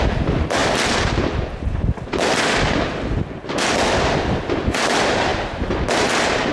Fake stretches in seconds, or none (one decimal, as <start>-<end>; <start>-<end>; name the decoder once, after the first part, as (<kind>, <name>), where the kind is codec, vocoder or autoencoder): none